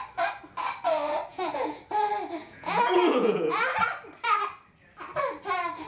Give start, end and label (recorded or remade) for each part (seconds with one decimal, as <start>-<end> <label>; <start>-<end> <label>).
0.0-1.3 recorded; 1.3-1.8 remade; 1.8-2.4 recorded; 2.4-3.5 remade; 3.5-5.9 recorded